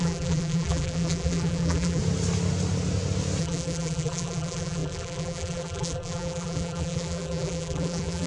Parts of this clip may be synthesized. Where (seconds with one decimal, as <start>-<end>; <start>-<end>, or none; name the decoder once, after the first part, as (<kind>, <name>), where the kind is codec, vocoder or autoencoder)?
0.0-2.0 (vocoder, BigVGAN v2); 3.4-8.3